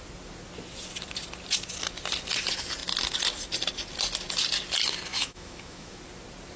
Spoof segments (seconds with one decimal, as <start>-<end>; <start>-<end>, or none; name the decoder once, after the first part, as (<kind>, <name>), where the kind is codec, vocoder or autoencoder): 5.1-6.0 (autoencoder, DAC-VAE)